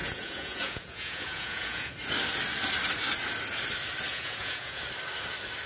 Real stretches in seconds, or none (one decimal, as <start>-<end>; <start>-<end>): 1.9-4.1; 4.8-5.7